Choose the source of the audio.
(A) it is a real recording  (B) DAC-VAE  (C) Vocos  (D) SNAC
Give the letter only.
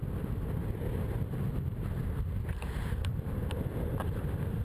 A